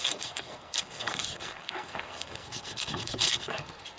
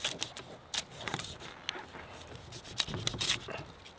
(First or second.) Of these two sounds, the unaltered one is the second